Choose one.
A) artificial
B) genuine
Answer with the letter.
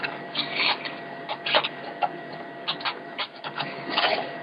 A